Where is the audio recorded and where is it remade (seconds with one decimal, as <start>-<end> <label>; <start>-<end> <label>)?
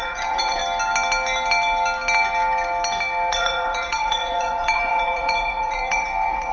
0.0-0.6 remade; 0.6-3.3 recorded; 3.3-6.5 remade